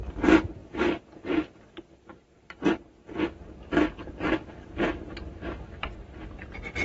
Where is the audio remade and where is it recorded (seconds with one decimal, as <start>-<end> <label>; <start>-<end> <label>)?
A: 0.0-6.8 recorded

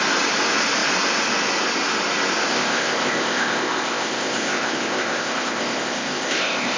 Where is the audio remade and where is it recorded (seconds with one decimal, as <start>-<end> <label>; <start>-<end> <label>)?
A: 0.0-2.5 recorded; 2.5-6.8 remade

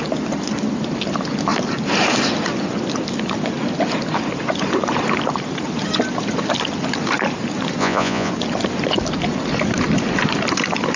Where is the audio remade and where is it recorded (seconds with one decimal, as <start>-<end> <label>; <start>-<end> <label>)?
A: 0.0-7.8 recorded; 7.8-8.3 remade; 8.3-11.0 recorded

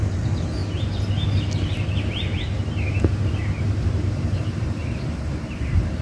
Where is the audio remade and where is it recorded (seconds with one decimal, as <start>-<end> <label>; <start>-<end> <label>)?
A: 0.0-0.6 remade; 0.6-3.6 recorded; 3.6-6.0 remade

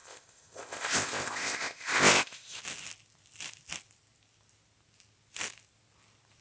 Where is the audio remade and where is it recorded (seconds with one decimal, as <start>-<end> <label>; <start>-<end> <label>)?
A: 0.0-2.6 remade; 2.6-6.4 recorded

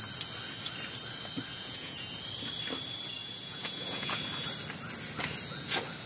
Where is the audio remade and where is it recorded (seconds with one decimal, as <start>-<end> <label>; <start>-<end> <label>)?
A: 0.0-1.5 recorded; 1.5-2.2 remade; 2.2-3.2 recorded; 3.2-4.2 remade; 4.2-6.1 recorded